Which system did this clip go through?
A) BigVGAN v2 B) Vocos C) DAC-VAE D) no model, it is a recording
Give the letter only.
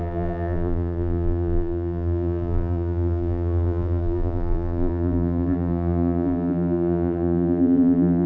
A